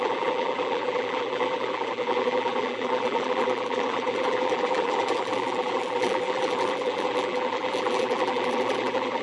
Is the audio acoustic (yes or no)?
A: no